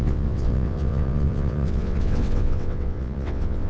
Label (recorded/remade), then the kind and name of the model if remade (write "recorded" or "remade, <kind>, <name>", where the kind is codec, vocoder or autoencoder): remade, vocoder, WaveNeXt